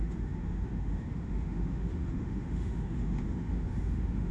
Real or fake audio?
fake